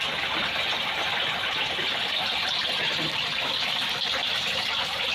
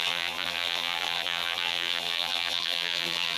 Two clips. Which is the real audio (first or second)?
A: first